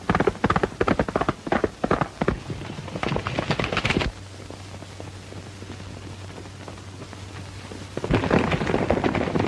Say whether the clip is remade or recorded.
recorded